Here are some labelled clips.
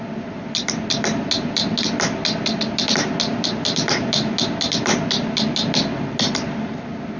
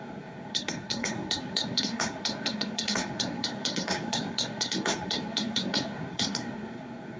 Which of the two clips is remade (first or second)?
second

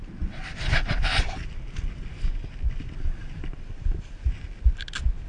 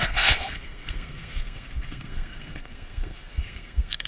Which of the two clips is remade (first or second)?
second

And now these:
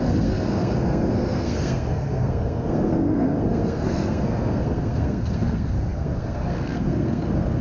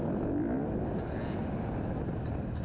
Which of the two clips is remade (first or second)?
first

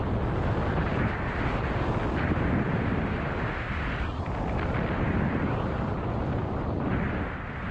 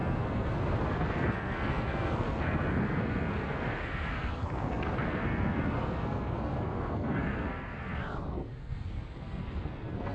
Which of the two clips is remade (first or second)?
second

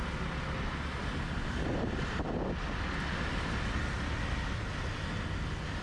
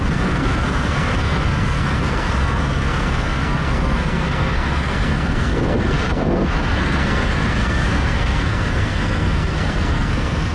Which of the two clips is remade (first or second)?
second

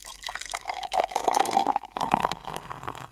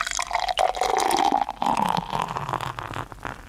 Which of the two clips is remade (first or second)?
first